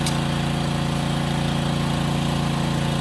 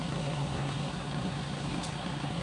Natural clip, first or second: first